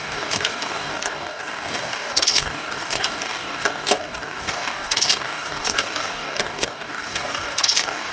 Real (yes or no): no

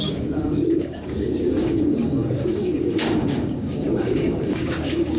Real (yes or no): no